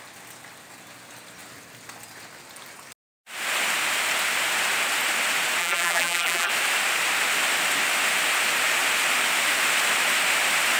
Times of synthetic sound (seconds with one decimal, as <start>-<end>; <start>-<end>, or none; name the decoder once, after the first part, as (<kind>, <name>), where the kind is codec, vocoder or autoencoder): 5.6-6.5 (vocoder, BigVGAN v2)